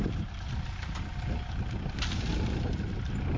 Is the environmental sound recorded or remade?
recorded